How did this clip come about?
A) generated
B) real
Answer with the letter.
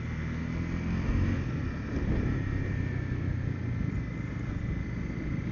B